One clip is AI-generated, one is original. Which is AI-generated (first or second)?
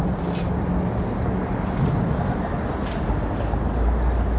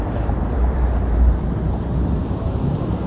second